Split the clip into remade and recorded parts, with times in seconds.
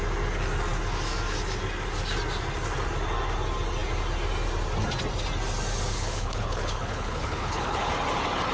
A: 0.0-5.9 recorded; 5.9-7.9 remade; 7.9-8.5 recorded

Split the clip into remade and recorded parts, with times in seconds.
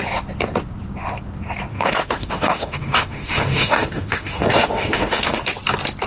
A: 0.0-1.7 recorded; 1.7-5.4 remade; 5.4-6.1 recorded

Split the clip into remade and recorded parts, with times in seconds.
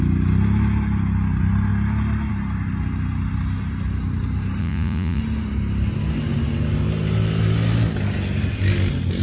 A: 0.0-4.6 recorded; 4.6-5.2 remade; 5.2-9.2 recorded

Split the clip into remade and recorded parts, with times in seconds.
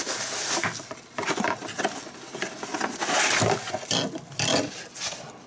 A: 0.0-5.5 recorded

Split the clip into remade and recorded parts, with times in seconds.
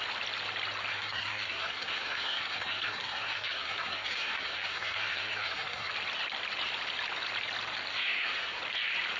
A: 0.0-0.9 recorded; 0.9-5.9 remade; 5.9-7.9 recorded; 7.9-8.6 remade; 8.6-9.2 recorded